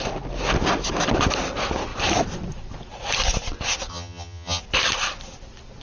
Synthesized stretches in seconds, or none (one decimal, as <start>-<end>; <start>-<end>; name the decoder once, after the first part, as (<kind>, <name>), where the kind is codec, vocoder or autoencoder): 3.9-4.6 (vocoder, HiFi-GAN)